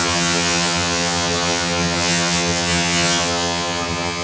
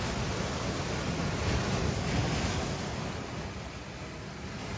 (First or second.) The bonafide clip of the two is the second